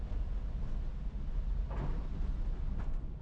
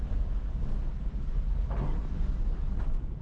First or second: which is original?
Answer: first